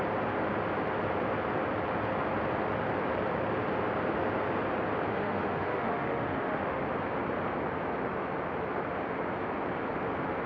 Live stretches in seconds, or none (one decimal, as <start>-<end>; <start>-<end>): 0.0-5.1; 6.8-10.5